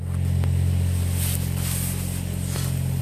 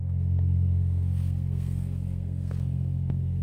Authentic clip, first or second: first